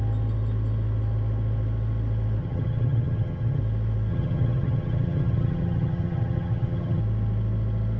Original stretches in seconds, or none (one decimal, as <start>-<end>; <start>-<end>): 0.0-2.4; 3.6-4.1; 7.0-8.0